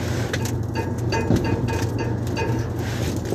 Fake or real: real